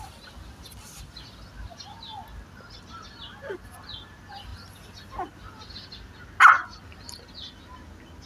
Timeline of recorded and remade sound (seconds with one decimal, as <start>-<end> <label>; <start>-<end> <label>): 0.0-8.3 recorded